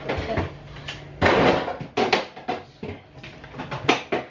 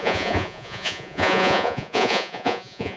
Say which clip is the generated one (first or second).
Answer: second